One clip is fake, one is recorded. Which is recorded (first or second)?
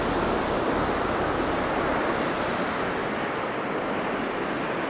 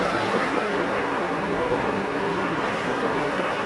first